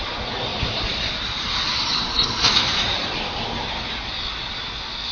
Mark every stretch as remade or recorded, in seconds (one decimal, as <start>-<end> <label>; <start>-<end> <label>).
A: 0.0-0.5 recorded; 0.5-1.1 remade; 1.1-5.1 recorded